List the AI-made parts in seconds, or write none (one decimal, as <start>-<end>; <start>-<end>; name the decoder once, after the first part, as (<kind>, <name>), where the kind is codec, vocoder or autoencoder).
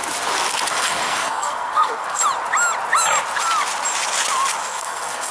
0.7-2.2 (codec, SNAC); 4.6-5.3